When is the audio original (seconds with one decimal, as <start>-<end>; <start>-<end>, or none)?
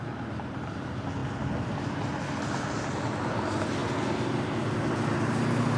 0.0-5.8